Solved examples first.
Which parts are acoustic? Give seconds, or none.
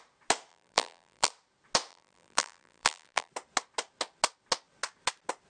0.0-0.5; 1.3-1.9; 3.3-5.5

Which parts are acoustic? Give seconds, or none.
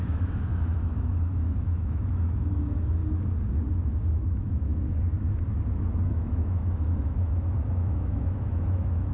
3.0-4.1; 4.7-5.7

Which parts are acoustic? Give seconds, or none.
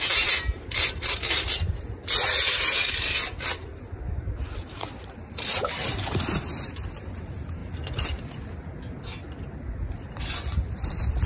3.5-4.7; 7.6-10.2